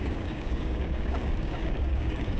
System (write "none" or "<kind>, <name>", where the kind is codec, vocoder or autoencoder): codec, DAC